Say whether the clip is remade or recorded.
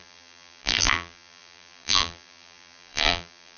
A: remade